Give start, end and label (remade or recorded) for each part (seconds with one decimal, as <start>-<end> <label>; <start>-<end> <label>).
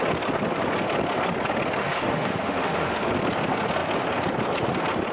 0.0-1.8 recorded; 1.8-3.1 remade; 3.1-5.1 recorded